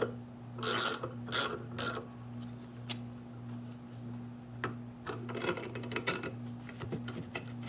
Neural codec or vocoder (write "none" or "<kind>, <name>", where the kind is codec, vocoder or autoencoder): none